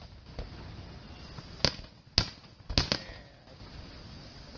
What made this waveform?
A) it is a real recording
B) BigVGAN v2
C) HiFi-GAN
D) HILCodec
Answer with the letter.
A